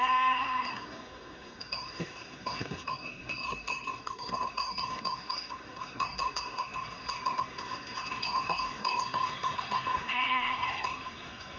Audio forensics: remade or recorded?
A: remade